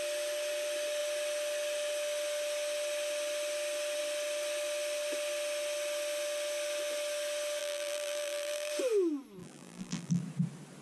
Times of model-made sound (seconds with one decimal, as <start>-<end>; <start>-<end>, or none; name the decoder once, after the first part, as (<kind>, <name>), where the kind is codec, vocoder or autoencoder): 7.6-8.7 (vocoder, BigVGAN v2); 9.4-10.2